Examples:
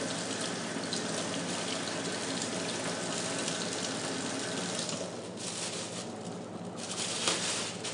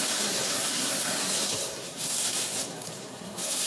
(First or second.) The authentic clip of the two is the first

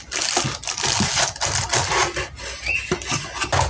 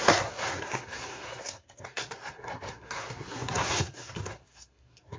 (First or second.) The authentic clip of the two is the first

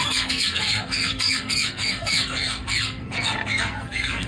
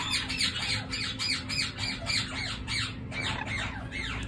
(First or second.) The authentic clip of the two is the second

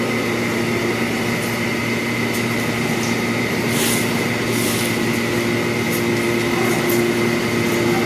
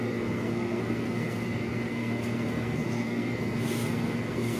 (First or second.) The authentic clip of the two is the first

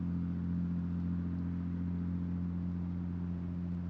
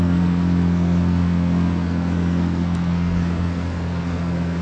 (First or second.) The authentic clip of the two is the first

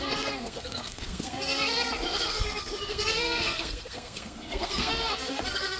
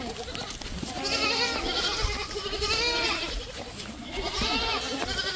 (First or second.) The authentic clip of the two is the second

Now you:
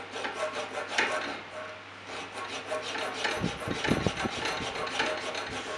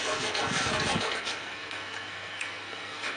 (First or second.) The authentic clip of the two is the first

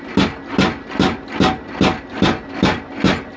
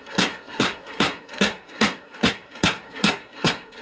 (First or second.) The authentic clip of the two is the first